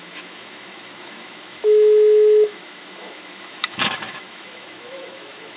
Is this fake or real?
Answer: fake